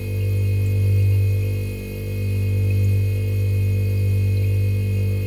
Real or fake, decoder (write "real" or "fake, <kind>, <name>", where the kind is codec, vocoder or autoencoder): real